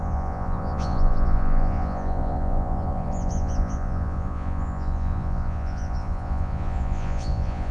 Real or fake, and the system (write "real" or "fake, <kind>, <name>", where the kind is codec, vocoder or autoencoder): fake, vocoder, Vocos